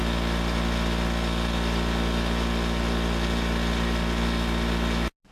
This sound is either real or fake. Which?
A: real